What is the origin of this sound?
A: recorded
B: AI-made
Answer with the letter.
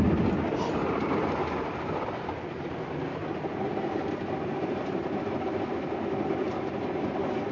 A